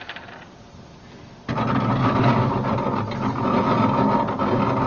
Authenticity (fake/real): real